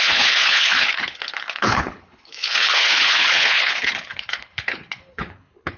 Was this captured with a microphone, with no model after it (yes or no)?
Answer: no